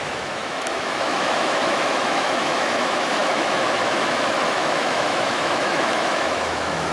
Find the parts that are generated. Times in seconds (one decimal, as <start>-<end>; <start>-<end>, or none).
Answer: 0.0-6.9